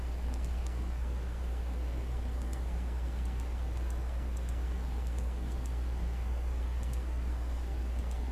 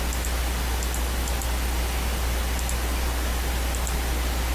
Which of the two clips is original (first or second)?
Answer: second